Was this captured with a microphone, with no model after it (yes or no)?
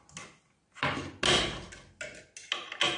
yes